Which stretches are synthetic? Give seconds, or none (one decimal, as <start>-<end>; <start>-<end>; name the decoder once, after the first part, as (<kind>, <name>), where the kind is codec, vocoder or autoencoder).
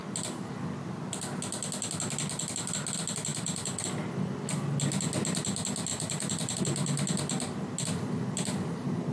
3.3-4.3 (vocoder, BigVGAN v2); 5.9-6.6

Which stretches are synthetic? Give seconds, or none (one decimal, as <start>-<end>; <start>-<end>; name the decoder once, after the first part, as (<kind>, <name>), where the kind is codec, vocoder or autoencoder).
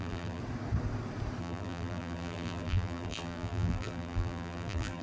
0.0-0.4 (vocoder, BigVGAN v2); 1.4-5.0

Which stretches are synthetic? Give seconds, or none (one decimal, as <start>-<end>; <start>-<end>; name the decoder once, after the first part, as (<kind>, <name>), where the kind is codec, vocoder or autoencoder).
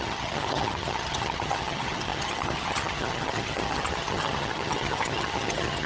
0.0-5.9 (vocoder, HiFi-GAN)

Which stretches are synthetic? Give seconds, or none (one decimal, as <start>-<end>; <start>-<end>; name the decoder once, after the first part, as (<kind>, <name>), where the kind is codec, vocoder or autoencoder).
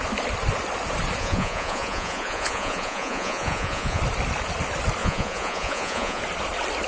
1.2-4.0 (vocoder, Vocos); 5.0-6.2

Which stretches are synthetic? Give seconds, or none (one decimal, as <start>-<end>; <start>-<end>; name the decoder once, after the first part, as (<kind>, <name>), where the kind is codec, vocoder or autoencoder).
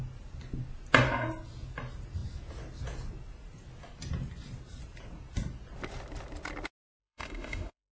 7.0-7.9 (autoencoder, DAC-VAE)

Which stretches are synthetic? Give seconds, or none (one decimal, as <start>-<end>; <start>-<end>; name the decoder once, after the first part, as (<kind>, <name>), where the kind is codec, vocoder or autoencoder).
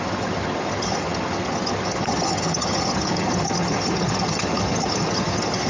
0.0-5.7 (vocoder, HiFi-GAN)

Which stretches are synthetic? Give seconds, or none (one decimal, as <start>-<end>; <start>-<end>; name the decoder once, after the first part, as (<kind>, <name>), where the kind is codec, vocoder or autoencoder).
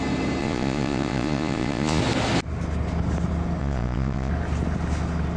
0.4-2.0 (vocoder, Vocos); 3.6-4.3